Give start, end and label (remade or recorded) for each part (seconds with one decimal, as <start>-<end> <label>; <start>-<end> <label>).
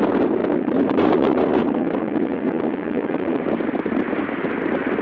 0.0-0.4 recorded; 0.4-3.4 remade; 3.4-5.0 recorded